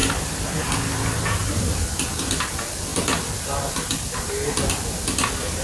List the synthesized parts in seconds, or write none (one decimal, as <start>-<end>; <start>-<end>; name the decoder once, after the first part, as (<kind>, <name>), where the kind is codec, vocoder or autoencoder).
0.0-0.9 (vocoder, BigVGAN v2); 1.4-2.2